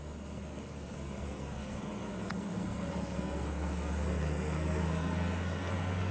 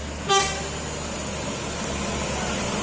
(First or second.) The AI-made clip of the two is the first